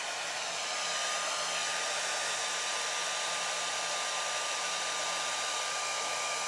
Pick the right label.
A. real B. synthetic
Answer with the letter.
A